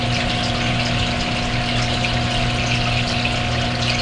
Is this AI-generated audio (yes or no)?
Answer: no